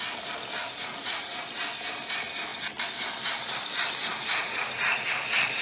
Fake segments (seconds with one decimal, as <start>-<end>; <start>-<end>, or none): 0.9-1.5; 4.1-5.0